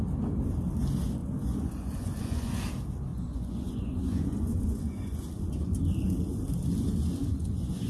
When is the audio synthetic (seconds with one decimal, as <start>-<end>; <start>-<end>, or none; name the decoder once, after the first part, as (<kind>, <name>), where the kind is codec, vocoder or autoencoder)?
1.2-2.6 (vocoder, Vocos); 3.1-5.2; 7.2-7.9